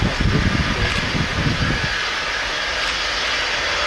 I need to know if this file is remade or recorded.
recorded